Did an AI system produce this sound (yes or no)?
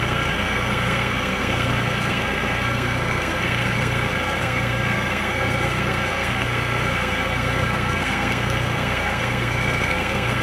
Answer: yes